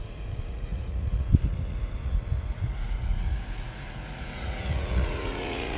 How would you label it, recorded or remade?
remade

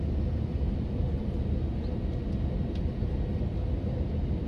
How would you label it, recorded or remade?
recorded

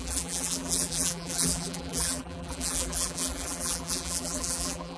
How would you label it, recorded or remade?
remade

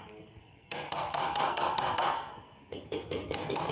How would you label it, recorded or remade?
remade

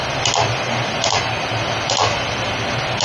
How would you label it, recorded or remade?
recorded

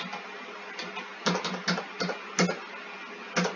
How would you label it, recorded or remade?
recorded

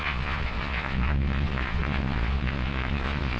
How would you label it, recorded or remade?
remade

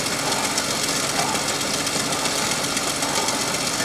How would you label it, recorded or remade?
recorded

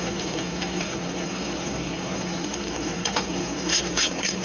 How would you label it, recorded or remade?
remade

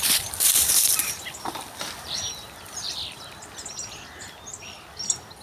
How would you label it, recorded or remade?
remade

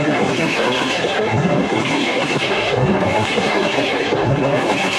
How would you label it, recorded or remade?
remade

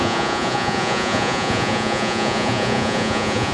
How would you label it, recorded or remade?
remade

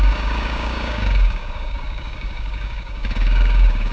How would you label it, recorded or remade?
remade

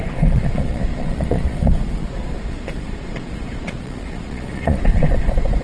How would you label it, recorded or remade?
remade